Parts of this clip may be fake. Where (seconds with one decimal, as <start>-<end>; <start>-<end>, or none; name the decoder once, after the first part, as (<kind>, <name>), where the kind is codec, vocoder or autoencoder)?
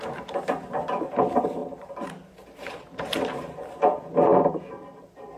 none